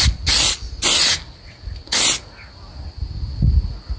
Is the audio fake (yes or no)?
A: no